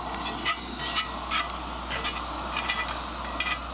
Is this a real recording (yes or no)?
yes